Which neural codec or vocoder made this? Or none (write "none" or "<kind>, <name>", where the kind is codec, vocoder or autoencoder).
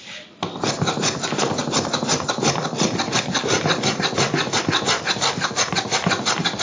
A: none